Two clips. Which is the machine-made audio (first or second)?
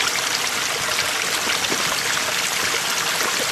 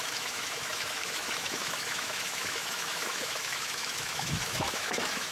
second